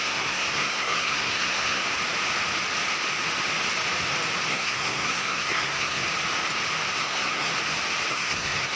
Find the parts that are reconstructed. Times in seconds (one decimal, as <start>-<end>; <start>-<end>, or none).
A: 0.0-1.8; 4.5-6.0; 7.0-7.5; 8.1-8.8